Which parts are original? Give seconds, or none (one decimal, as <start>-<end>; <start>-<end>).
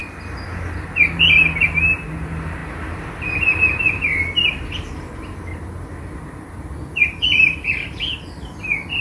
0.0-9.0